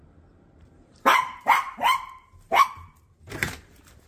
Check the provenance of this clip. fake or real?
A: fake